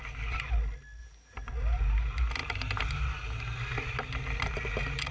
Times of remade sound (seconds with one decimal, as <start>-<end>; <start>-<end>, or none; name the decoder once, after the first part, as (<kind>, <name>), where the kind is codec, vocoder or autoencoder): 1.0-1.5 (vocoder, BigVGAN v2)